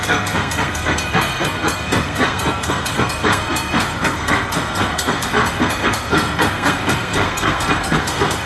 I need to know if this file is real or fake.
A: fake